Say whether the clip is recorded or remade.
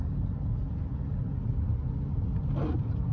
recorded